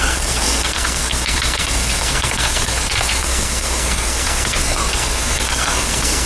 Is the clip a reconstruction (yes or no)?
yes